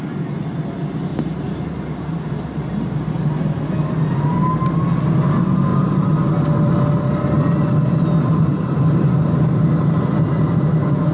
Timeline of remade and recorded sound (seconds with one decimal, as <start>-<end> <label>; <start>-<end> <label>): 0.0-1.1 recorded; 1.1-3.6 remade; 3.6-5.7 recorded; 5.7-6.3 remade; 6.3-8.5 recorded; 8.5-10.4 remade; 10.4-11.1 recorded